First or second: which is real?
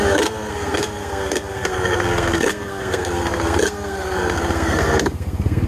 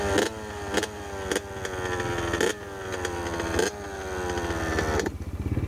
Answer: second